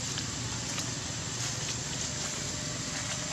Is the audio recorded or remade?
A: recorded